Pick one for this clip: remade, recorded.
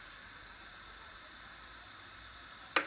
remade